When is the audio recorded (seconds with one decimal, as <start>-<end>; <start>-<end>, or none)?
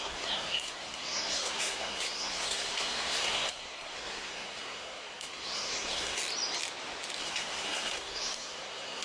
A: 6.2-7.2